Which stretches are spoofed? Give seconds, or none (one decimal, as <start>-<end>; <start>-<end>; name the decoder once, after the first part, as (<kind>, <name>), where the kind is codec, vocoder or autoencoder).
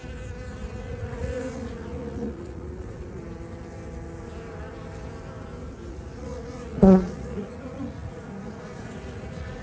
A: 0.8-3.2 (vocoder, Vocos); 5.9-9.6